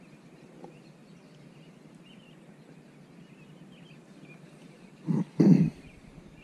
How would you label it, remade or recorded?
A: recorded